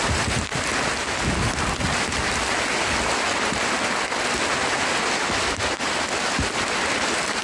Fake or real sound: real